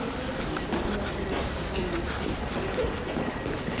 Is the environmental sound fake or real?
real